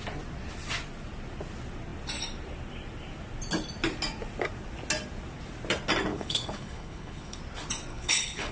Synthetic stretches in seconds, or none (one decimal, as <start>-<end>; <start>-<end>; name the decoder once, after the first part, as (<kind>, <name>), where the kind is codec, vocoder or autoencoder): 6.1-7.4 (codec, HILCodec); 7.9-8.5